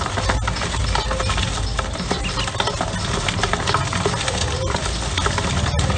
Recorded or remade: recorded